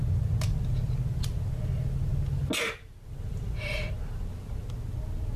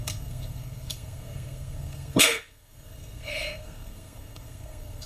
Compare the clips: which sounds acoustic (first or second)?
first